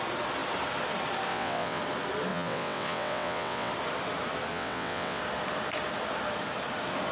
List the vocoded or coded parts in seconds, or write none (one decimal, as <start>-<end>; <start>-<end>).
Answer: 1.3-1.8; 2.3-3.7; 4.5-5.2